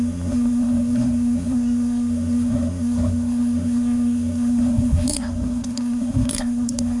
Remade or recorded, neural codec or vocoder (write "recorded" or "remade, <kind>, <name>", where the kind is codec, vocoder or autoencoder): remade, codec, SNAC